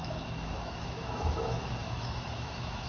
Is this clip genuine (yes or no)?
no